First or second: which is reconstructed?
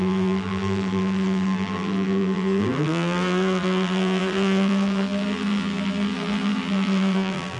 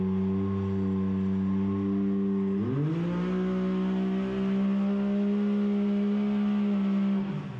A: first